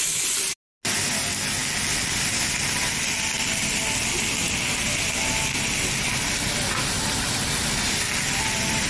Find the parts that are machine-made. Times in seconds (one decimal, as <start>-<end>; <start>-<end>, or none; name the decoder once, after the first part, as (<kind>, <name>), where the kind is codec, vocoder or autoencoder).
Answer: none